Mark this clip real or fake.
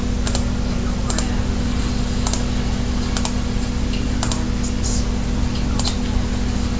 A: real